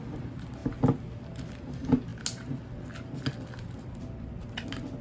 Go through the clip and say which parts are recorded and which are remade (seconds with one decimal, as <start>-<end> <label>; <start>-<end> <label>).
0.0-5.0 recorded